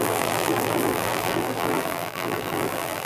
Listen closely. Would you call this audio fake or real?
fake